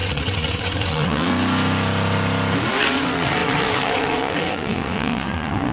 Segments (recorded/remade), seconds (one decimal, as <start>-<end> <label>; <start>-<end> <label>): 0.0-1.3 remade; 1.3-2.7 recorded; 2.7-5.7 remade